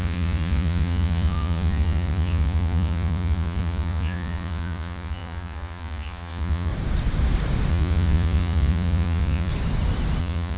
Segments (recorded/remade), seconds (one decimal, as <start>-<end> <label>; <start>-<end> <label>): 0.0-6.7 remade; 6.7-7.7 recorded; 7.7-9.5 remade; 9.5-10.2 recorded; 10.2-10.6 remade